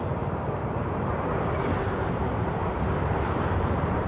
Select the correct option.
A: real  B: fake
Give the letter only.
B